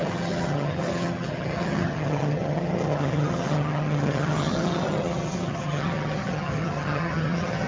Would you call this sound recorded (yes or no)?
no